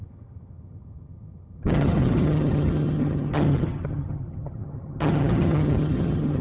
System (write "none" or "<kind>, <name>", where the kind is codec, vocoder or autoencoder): vocoder, HiFi-GAN